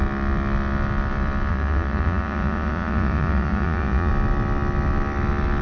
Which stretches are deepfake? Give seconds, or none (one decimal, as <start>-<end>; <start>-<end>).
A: 1.5-4.1